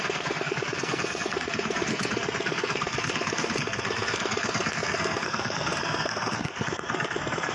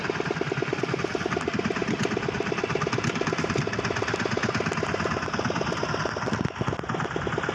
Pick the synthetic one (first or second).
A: first